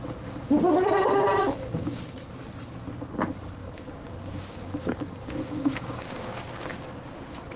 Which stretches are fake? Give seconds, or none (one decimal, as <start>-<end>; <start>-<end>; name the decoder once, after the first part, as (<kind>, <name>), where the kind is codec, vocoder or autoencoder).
1.4-2.0 (codec, DAC); 3.6-6.9